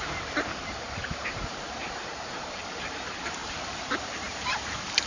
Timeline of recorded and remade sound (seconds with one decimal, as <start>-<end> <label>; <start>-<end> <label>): 0.0-5.1 remade